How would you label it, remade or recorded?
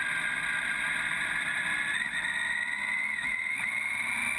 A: recorded